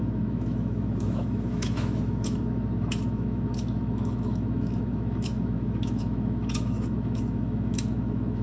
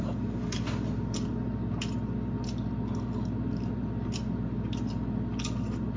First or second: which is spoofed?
first